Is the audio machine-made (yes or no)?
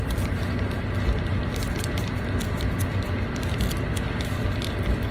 no